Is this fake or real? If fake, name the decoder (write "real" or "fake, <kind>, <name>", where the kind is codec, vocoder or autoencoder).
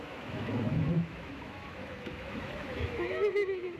fake, autoencoder, DAC-VAE